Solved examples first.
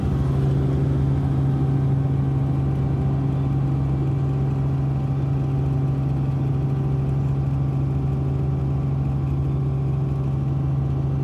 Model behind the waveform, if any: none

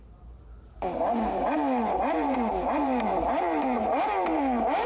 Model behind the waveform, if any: vocoder, BigVGAN v2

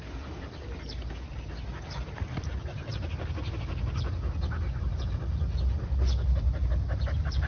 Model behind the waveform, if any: none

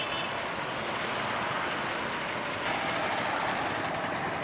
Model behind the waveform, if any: none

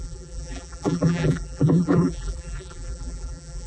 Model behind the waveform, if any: vocoder, BigVGAN v2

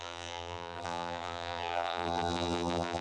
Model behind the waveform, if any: vocoder, BigVGAN v2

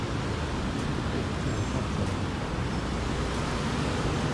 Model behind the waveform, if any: none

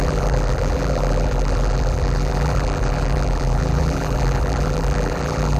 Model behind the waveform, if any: vocoder, BigVGAN v2